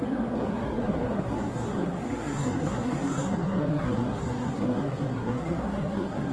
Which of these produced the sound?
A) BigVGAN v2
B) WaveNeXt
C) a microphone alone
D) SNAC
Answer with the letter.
D